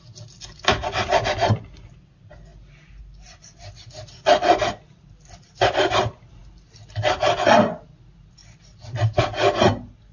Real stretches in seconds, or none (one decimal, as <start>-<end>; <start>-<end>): 0.0-0.7; 1.6-2.5; 5.3-8.4; 9.2-10.1